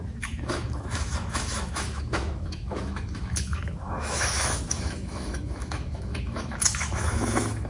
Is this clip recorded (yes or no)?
no